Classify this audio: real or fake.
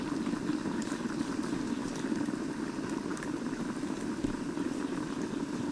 real